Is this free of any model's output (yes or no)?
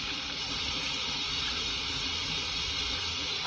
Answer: no